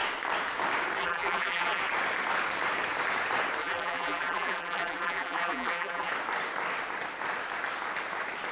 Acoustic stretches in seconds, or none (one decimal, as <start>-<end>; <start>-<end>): 0.0-1.0; 1.8-3.6; 6.1-8.5